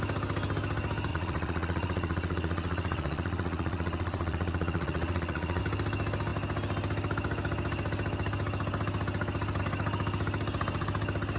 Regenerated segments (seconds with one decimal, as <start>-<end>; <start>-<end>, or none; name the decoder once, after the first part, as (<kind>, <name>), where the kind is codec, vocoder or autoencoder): 1.1-5.6 (vocoder, Vocos)